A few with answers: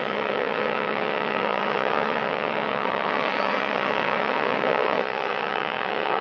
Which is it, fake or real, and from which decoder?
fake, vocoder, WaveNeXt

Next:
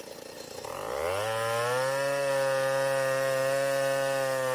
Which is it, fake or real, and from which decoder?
real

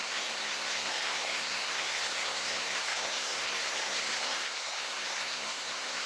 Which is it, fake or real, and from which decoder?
fake, codec, SNAC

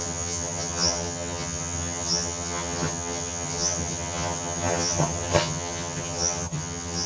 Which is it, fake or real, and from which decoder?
fake, vocoder, HiFi-GAN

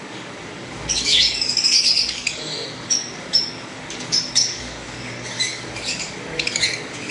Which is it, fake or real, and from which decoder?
fake, codec, DAC